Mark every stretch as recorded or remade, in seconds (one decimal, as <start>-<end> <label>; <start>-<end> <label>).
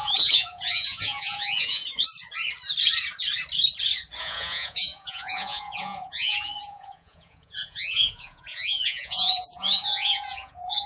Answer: 0.0-1.8 remade; 1.8-4.2 recorded; 4.2-10.9 remade